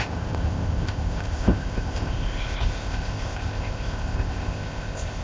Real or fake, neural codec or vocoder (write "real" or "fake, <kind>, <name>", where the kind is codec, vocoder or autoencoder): fake, codec, ZipCodec